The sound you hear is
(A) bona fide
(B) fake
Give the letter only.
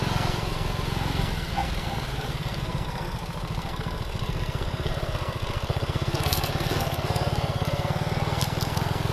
B